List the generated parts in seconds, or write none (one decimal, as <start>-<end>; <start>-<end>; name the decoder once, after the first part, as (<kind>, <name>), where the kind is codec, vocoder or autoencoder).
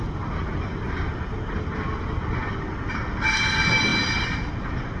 none